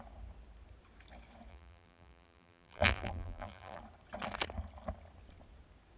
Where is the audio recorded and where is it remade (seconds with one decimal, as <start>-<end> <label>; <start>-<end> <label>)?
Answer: 0.0-1.5 recorded; 1.5-3.8 remade; 3.8-6.0 recorded